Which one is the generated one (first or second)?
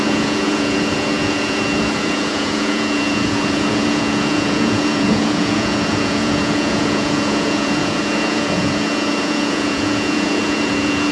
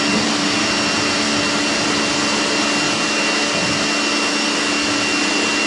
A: first